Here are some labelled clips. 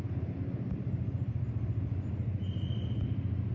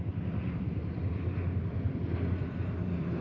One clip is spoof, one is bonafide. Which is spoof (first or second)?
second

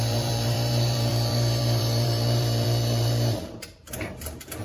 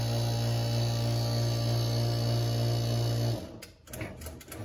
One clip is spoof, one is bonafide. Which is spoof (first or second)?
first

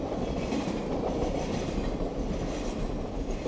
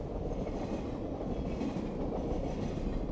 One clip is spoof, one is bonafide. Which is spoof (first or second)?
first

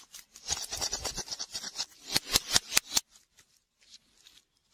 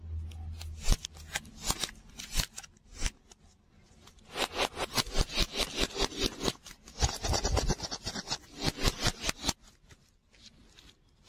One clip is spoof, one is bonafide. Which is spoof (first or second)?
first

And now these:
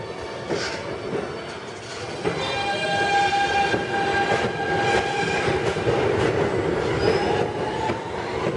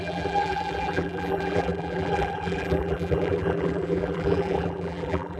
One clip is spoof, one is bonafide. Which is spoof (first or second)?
second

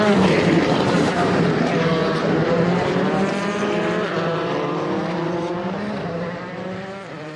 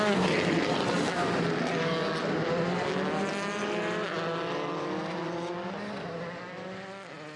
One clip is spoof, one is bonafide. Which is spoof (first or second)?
first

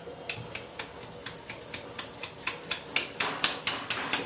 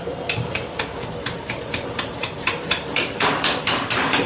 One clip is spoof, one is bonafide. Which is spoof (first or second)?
second